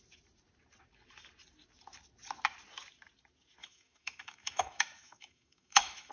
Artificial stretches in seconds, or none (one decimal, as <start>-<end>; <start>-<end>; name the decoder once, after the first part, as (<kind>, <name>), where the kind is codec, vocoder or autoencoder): 3.6-6.1 (autoencoder, DAC-VAE)